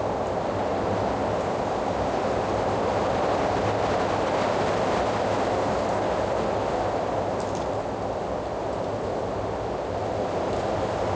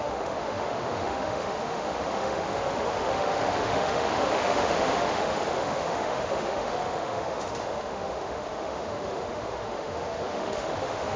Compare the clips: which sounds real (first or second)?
first